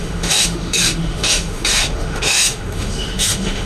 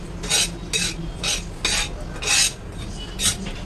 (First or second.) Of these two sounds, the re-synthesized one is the first